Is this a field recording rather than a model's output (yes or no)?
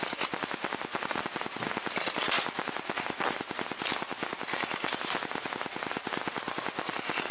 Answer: yes